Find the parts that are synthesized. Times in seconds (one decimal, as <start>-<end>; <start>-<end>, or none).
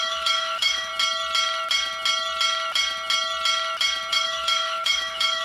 0.0-0.9; 4.1-5.4